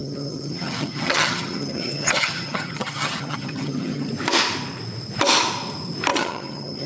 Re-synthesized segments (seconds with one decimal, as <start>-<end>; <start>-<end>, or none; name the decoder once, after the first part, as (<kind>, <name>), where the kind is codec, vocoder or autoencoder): 0.0-4.1 (vocoder, HiFi-GAN); 6.1-6.9